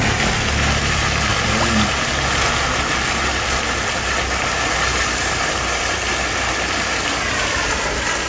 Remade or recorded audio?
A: recorded